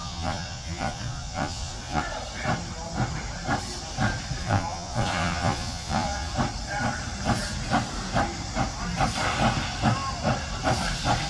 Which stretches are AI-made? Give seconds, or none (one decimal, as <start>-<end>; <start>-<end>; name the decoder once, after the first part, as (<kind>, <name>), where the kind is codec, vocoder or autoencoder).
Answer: 0.0-2.0 (vocoder, Vocos); 4.4-6.3